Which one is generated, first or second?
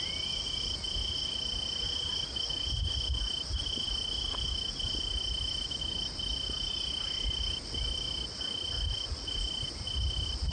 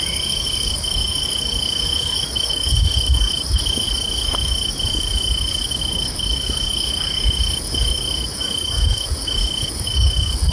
second